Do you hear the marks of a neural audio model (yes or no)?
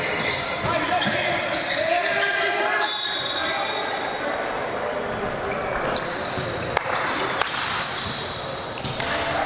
no